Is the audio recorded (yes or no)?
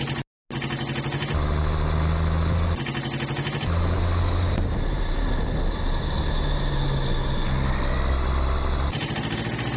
yes